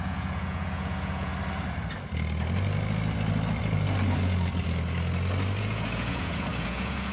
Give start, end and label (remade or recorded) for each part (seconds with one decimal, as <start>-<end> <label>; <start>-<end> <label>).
0.0-1.3 remade; 1.3-5.6 recorded; 5.6-7.1 remade